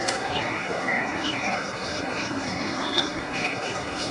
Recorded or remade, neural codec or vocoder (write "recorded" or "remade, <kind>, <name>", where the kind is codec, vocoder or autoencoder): remade, codec, SNAC